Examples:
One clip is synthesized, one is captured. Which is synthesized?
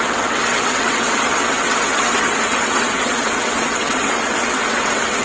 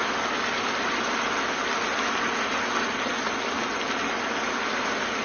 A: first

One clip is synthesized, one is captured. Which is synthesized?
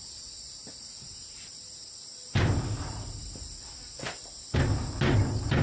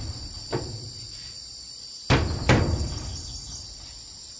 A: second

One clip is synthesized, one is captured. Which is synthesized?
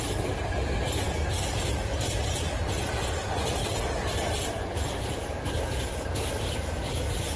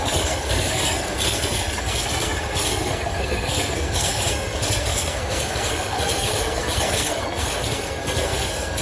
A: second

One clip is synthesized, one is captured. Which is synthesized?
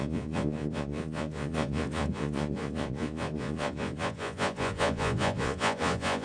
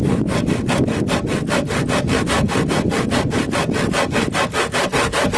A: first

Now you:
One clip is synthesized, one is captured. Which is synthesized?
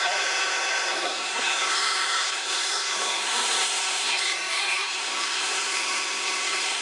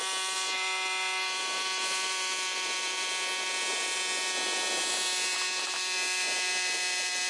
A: first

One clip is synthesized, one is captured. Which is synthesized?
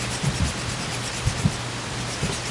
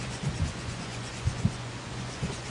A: second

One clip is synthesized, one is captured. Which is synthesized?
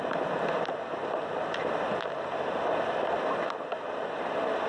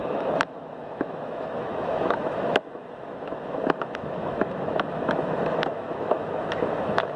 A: second